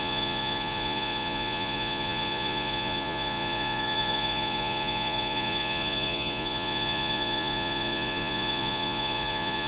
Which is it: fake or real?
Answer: fake